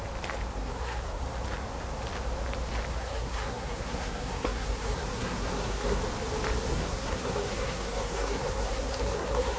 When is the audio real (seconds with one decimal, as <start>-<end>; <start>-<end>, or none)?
0.0-0.5; 1.2-2.9; 6.0-6.7